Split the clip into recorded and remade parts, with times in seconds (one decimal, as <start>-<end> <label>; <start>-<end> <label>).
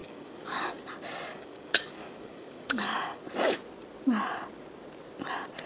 0.0-0.7 remade; 0.7-1.3 recorded; 1.3-3.2 remade; 3.2-5.7 recorded